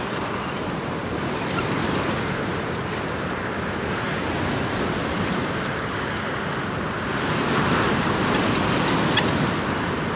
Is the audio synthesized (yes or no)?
no